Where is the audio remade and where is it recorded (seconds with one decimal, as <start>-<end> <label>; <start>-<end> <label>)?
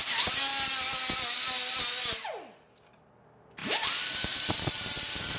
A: 0.0-3.6 recorded; 3.6-5.4 remade